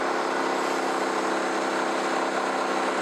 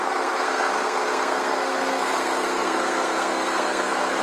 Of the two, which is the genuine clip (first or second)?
first